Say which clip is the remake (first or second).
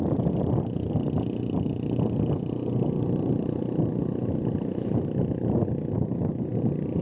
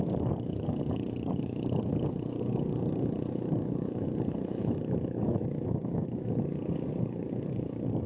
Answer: second